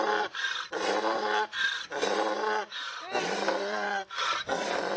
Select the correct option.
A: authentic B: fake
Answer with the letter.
B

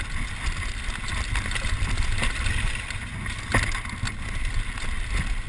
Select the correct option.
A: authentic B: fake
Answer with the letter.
A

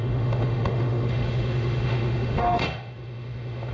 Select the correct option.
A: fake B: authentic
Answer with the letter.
A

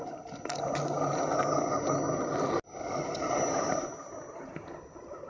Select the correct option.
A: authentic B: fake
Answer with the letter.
A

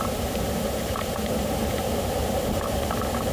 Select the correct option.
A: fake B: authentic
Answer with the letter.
A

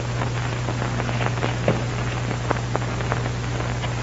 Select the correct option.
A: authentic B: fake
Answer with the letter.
A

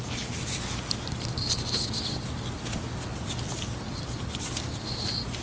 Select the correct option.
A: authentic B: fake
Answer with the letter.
A